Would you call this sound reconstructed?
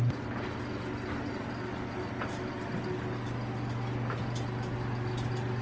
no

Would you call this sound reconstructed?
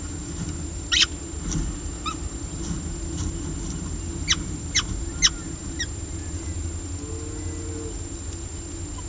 no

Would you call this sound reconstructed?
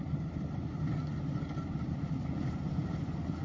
yes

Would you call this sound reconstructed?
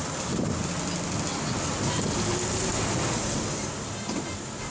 no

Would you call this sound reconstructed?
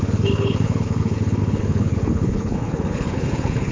yes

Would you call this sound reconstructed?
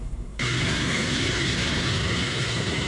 yes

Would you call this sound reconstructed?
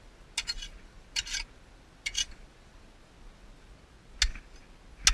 no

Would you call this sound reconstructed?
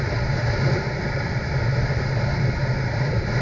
no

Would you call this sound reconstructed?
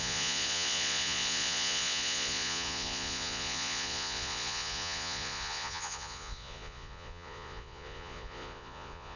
yes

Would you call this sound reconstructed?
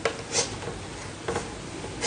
no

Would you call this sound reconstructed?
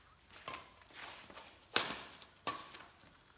no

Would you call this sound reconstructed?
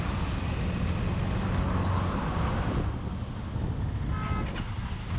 no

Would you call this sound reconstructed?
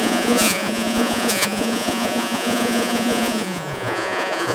yes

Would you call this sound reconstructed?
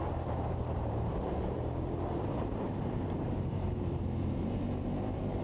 yes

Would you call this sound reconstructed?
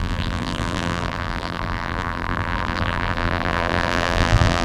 yes